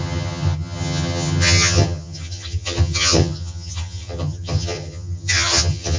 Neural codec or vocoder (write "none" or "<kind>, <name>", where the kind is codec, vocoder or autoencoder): vocoder, HiFi-GAN